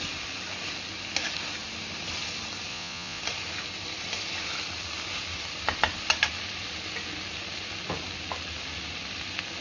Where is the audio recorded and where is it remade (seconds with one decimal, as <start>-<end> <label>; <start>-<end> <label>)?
0.0-2.7 recorded; 2.7-3.2 remade; 3.2-9.6 recorded